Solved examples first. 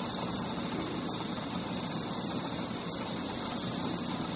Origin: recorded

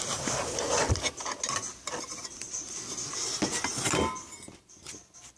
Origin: recorded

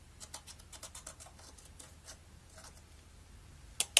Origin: recorded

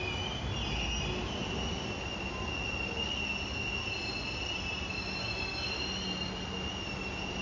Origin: recorded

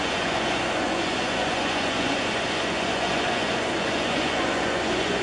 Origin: remade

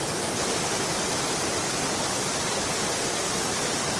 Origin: recorded